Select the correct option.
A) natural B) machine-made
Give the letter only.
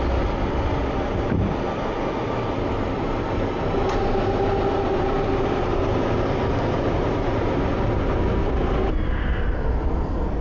A